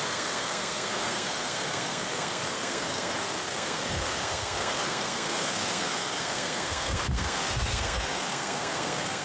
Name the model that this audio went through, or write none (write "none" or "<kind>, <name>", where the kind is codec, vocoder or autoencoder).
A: codec, SNAC